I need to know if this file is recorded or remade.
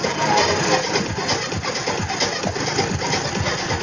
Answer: recorded